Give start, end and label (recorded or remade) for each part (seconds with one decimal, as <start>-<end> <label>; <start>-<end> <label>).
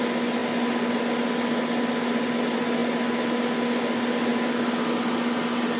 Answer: 0.0-5.8 recorded